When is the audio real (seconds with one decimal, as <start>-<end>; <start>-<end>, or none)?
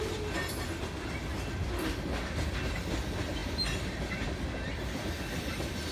0.0-5.9